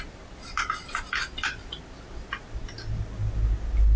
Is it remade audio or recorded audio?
recorded